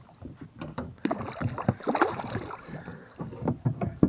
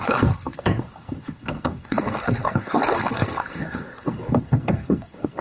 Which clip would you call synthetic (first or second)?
second